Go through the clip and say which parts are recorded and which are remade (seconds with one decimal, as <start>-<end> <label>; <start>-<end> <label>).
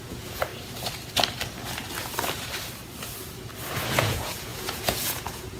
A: 0.0-0.5 remade; 0.5-3.9 recorded; 3.9-5.6 remade